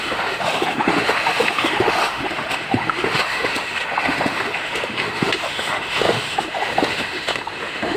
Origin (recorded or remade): remade